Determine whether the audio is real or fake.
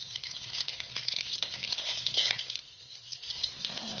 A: fake